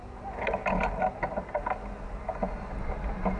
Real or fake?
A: real